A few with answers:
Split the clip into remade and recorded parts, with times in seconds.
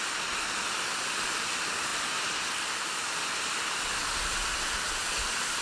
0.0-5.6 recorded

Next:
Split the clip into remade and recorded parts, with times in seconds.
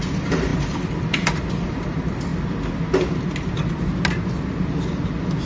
0.0-2.3 remade; 2.3-5.5 recorded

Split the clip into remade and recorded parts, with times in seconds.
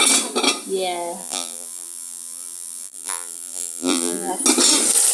0.0-1.2 recorded; 1.2-4.3 remade; 4.3-5.1 recorded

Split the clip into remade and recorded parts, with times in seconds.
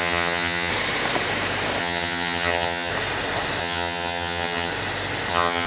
0.0-0.7 remade; 0.7-1.8 recorded; 1.8-2.9 remade; 2.9-3.6 recorded; 3.6-4.7 remade; 4.7-5.3 recorded; 5.3-5.7 remade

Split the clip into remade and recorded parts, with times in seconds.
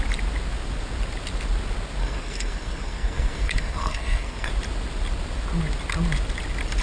0.0-2.0 recorded; 2.0-4.5 remade; 4.5-6.8 recorded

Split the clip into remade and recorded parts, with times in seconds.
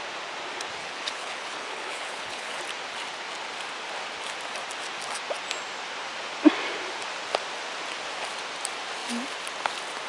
0.0-0.8 recorded; 0.8-2.6 remade; 2.6-10.1 recorded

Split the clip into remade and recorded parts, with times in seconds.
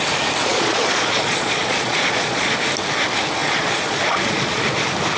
0.0-0.4 recorded; 0.4-2.5 remade; 2.5-3.4 recorded; 3.4-4.6 remade; 4.6-5.2 recorded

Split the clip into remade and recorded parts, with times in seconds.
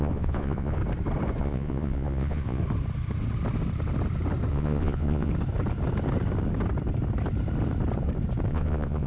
0.0-0.8 remade; 0.8-1.4 recorded; 1.4-2.6 remade; 2.6-4.5 recorded; 4.5-5.3 remade; 5.3-8.5 recorded; 8.5-9.1 remade